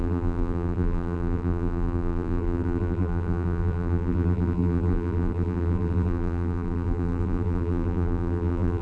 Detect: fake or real fake